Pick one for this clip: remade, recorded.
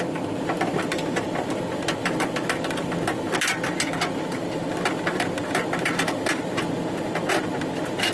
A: recorded